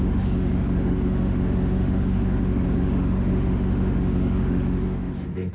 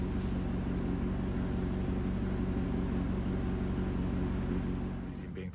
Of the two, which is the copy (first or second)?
first